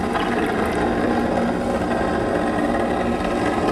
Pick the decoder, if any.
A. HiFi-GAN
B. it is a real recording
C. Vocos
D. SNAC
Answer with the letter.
B